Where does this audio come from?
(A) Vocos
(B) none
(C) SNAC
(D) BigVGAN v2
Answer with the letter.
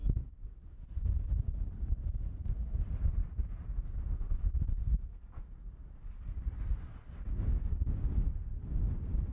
B